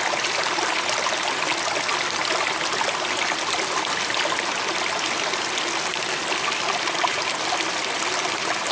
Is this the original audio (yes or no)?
yes